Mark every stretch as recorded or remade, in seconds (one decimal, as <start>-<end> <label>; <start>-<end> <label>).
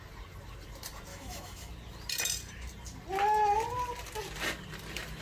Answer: 0.0-1.1 recorded; 1.1-1.7 remade; 1.7-5.2 recorded